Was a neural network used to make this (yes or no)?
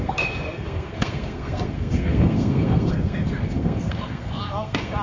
yes